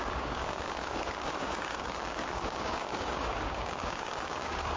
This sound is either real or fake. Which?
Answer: fake